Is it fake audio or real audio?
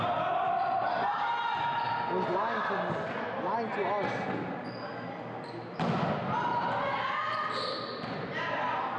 real